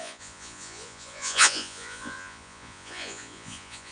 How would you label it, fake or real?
fake